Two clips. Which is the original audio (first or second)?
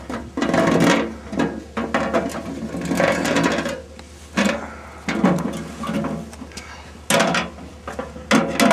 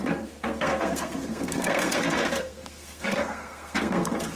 first